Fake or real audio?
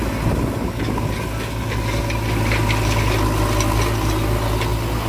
real